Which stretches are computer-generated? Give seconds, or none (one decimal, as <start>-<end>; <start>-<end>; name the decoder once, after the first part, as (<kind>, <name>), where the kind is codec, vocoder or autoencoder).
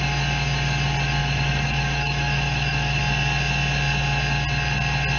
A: 1.2-3.0 (autoencoder, DAC-VAE)